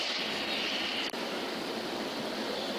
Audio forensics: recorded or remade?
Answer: recorded